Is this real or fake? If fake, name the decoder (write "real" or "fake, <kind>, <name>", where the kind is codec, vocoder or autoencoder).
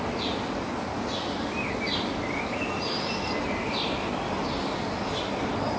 real